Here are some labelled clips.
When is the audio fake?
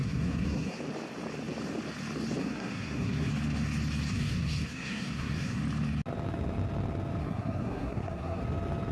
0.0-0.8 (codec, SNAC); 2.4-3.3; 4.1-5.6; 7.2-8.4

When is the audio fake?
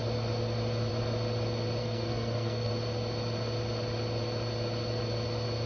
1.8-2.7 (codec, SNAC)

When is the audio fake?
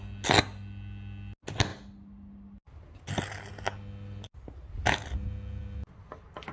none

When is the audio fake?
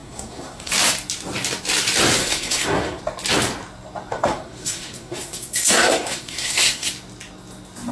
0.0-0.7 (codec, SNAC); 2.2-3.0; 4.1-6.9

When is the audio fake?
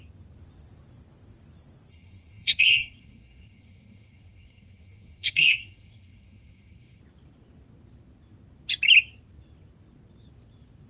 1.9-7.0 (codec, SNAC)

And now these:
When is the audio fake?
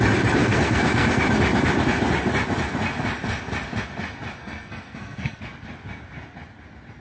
0.4-1.2 (codec, SNAC); 4.4-5.4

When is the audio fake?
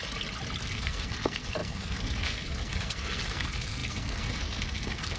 0.6-5.2 (codec, SNAC)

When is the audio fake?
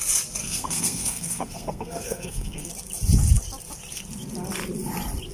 0.4-2.7 (codec, SNAC)